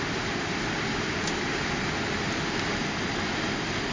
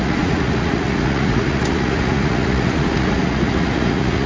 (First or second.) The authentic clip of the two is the first